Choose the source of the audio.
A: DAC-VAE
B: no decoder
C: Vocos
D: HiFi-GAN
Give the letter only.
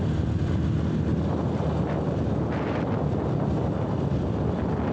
B